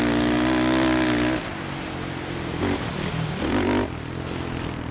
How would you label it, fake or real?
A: real